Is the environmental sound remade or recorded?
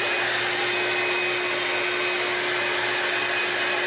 recorded